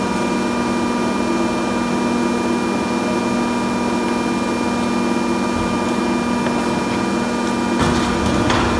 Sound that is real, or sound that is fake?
real